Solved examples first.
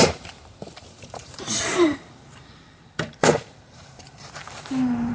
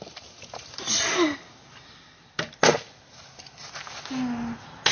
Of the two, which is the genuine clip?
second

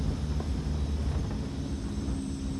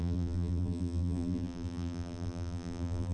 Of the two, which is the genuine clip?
first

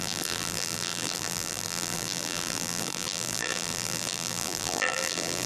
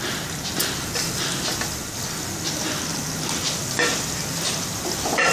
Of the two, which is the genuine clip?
second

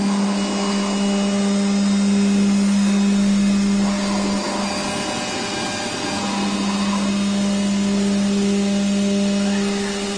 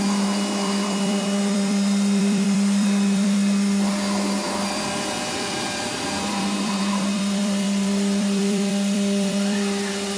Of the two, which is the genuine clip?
first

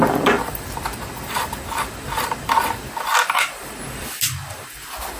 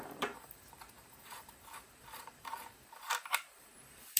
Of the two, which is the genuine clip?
first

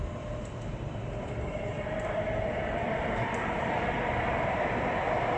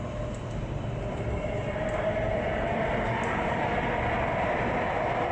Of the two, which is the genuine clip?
second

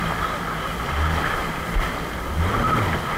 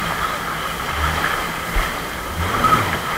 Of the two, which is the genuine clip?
first